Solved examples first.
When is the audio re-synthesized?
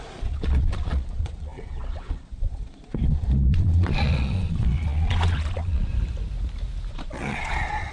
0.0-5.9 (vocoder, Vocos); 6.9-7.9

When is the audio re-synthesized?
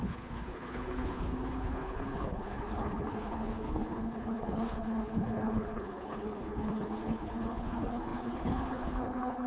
0.0-9.5 (codec, HILCodec)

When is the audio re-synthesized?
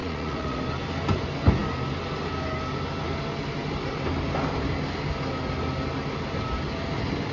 0.0-0.6 (vocoder, Vocos)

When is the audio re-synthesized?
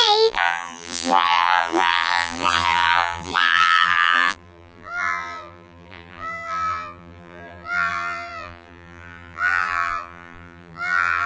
0.0-11.3 (vocoder, BigVGAN v2)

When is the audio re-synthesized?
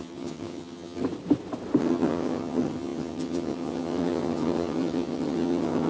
0.0-1.0 (vocoder, HiFi-GAN); 1.8-5.9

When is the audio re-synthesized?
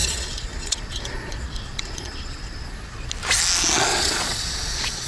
0.0-3.1 (vocoder, Vocos); 3.9-5.1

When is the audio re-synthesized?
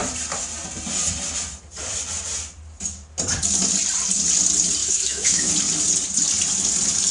4.8-5.5 (autoencoder, DAC-VAE)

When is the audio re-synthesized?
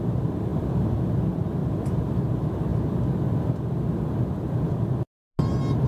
none